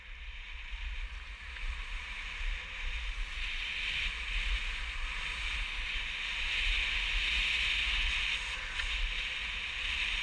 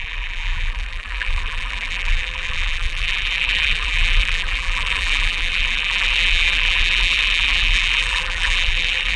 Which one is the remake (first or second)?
second